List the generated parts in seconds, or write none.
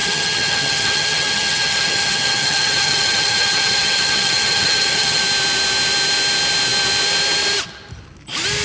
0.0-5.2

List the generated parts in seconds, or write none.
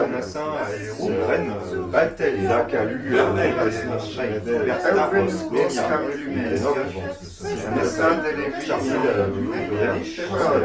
3.0-4.2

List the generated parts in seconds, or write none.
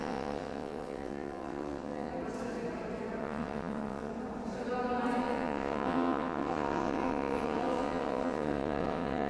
0.0-2.1; 3.2-4.1; 5.2-9.3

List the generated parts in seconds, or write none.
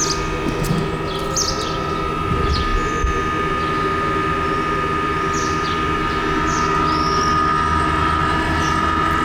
none